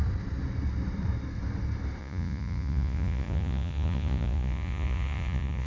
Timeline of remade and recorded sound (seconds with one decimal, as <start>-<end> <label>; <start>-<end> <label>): 0.0-2.0 recorded; 2.0-5.7 remade